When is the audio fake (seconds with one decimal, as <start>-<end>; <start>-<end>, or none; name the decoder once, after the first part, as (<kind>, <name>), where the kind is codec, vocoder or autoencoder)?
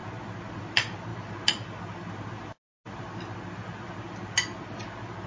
none